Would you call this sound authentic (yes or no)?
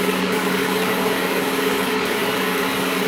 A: no